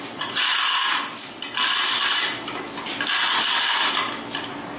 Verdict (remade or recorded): recorded